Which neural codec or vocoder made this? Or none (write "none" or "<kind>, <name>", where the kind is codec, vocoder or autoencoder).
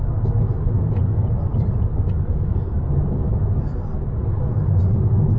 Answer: none